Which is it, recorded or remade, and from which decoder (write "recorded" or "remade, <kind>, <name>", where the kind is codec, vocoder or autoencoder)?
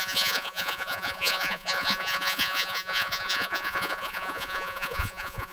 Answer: remade, vocoder, Vocos